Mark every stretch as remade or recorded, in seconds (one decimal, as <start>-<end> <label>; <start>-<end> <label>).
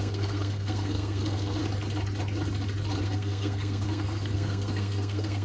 0.0-1.6 remade; 1.6-3.0 recorded; 3.0-5.4 remade